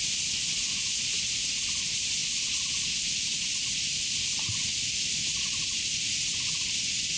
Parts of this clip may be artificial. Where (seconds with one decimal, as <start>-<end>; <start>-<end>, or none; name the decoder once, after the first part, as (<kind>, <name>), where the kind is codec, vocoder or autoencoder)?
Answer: none